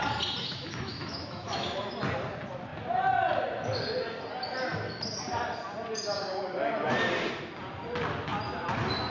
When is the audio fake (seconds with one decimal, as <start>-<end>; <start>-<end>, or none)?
0.4-1.9